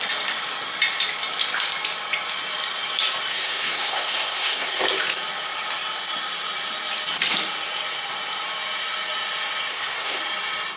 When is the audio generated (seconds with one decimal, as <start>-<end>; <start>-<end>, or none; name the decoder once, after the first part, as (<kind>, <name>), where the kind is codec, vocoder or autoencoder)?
3.3-4.8 (codec, SNAC); 9.7-10.2